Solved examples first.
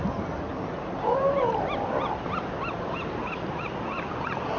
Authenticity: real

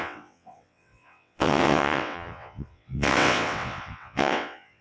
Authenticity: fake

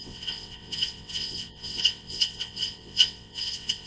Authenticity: fake